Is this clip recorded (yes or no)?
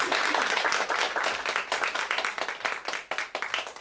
yes